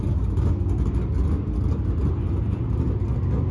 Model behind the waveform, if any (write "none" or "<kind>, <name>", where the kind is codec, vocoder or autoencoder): none